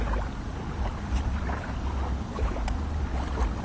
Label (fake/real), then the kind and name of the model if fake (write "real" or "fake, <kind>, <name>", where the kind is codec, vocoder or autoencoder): real